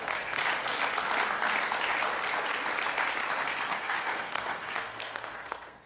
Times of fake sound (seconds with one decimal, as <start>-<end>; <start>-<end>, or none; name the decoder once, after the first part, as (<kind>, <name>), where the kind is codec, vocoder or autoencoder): 0.0-0.4 (codec, SNAC); 3.7-5.9